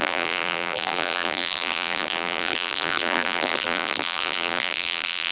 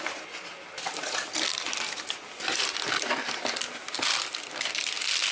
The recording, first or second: second